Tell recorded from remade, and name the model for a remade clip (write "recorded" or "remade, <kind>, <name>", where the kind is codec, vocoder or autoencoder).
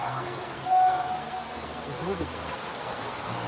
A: remade, codec, SNAC